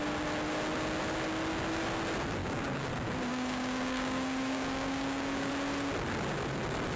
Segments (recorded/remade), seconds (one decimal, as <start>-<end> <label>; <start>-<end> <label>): 0.0-2.4 recorded; 2.4-2.9 remade; 2.9-3.3 recorded; 3.3-5.5 remade; 5.5-7.0 recorded